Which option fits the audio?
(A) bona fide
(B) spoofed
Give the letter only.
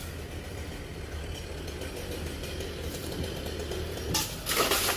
A